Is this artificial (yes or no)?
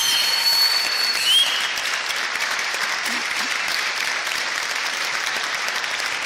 yes